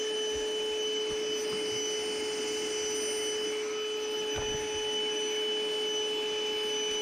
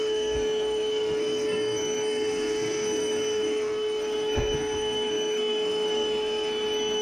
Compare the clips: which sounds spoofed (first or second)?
second